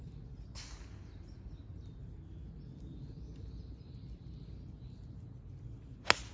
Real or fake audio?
real